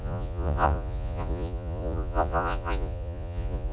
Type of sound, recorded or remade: remade